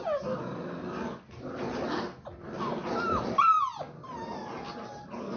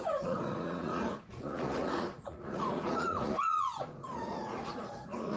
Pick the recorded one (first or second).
first